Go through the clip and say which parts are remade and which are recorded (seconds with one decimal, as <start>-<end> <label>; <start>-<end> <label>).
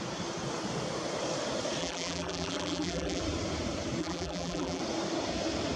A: 0.0-1.8 recorded; 1.8-3.2 remade; 3.2-4.0 recorded; 4.0-4.8 remade; 4.8-5.8 recorded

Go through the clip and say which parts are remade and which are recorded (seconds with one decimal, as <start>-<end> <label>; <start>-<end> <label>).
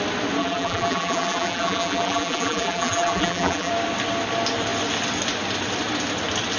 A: 0.0-0.4 recorded; 0.4-3.7 remade; 3.7-6.6 recorded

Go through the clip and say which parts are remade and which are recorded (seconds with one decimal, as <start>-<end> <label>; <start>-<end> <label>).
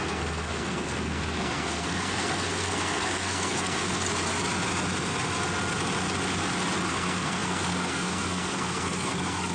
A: 0.0-4.0 remade; 4.0-6.9 recorded; 6.9-9.5 remade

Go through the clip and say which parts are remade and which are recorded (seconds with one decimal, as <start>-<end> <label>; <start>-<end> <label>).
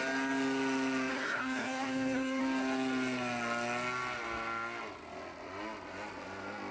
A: 0.0-1.1 recorded; 1.1-2.4 remade; 2.4-6.7 recorded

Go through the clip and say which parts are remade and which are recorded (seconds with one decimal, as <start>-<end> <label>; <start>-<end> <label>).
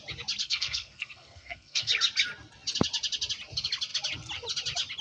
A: 0.0-0.4 recorded; 0.4-1.9 remade; 1.9-5.0 recorded